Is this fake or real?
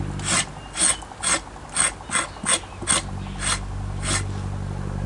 real